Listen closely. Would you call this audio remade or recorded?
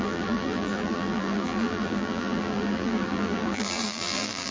remade